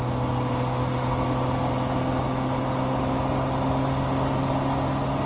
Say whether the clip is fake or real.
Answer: real